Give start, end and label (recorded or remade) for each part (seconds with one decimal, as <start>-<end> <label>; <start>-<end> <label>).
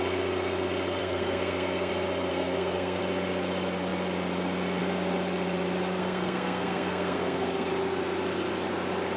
0.0-1.0 recorded; 1.0-1.9 remade; 1.9-2.3 recorded; 2.3-3.0 remade; 3.0-6.0 recorded; 6.0-7.7 remade; 7.7-9.2 recorded